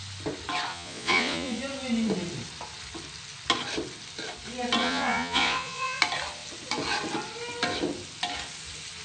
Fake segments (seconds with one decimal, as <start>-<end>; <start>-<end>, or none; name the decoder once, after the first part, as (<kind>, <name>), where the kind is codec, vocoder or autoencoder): 0.7-1.6 (vocoder, Vocos); 4.8-6.0